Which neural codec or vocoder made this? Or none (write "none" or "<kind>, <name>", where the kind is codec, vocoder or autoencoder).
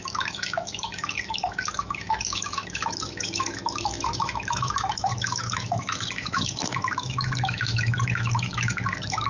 autoencoder, DAC-VAE